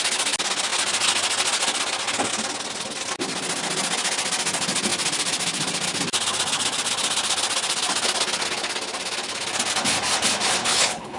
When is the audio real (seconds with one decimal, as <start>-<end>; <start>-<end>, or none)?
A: 0.0-10.6